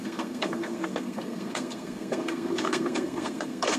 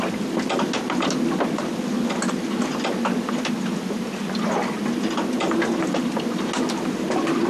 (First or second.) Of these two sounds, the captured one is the second